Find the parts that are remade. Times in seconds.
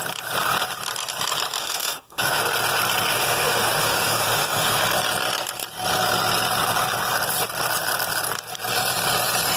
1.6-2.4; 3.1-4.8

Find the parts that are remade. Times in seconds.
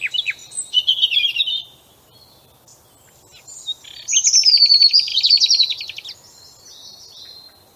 none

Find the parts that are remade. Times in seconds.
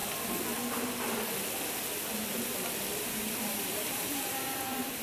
3.0-5.0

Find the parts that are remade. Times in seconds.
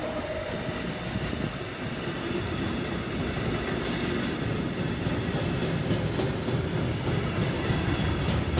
none